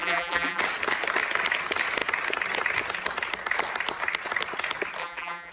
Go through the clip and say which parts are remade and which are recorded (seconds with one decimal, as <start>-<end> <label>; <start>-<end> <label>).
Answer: 0.0-0.6 remade; 0.6-5.0 recorded; 5.0-5.5 remade